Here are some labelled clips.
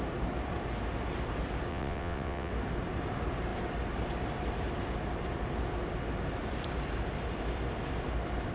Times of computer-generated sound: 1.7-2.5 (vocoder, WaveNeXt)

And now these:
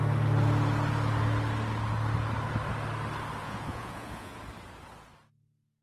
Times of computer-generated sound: 3.4-4.4 (vocoder, Vocos)

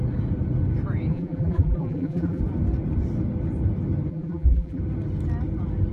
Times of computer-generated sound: 1.1-2.4 (vocoder, BigVGAN v2); 4.1-4.8

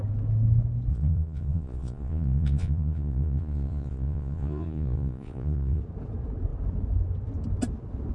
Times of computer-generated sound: 0.9-5.8 (vocoder, Vocos)